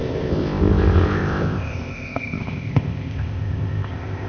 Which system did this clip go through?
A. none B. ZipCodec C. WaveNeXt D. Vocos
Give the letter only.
B